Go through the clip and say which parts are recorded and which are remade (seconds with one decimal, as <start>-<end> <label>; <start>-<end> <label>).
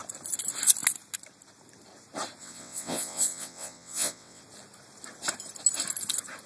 0.0-2.4 recorded; 2.4-4.4 remade; 4.4-6.5 recorded